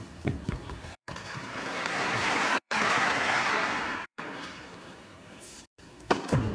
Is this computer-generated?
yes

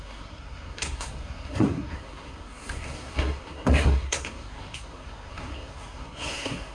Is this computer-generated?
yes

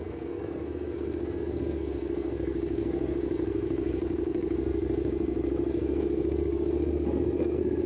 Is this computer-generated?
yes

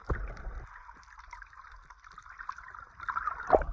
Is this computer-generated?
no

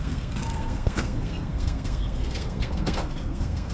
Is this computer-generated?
yes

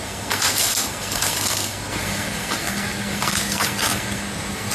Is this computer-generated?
yes